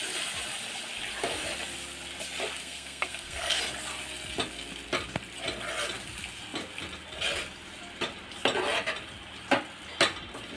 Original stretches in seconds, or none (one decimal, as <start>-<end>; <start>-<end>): 0.0-2.6; 3.6-10.6

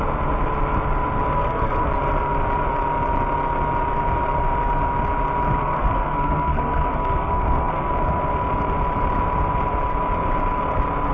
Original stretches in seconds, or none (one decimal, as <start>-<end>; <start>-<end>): 0.0-1.3; 1.9-5.6; 7.9-11.1

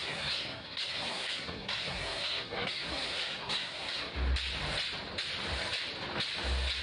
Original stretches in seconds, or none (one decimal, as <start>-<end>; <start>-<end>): 4.1-6.8

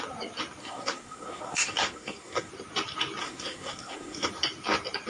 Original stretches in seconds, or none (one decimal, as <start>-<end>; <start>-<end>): 0.0-0.6; 2.5-3.2; 4.3-5.1

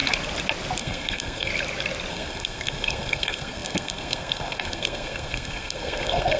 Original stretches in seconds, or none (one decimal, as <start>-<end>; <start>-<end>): 0.0-0.8; 1.5-2.1

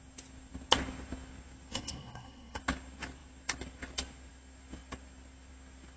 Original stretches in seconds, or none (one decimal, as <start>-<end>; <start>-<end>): 0.0-1.7; 2.6-6.0